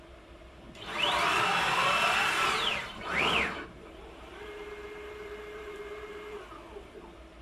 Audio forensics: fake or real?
fake